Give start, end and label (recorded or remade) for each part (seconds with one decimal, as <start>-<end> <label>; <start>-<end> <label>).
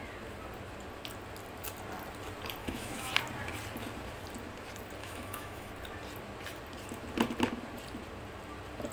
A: 0.0-2.6 recorded; 2.6-3.1 remade; 3.1-5.0 recorded; 5.0-5.7 remade; 5.7-8.9 recorded